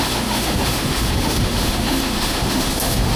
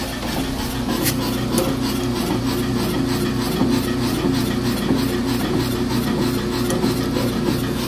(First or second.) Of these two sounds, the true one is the second